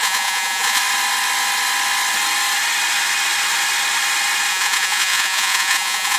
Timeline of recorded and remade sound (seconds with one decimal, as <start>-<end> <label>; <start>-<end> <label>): 0.0-0.8 remade; 0.8-4.5 recorded; 4.5-6.2 remade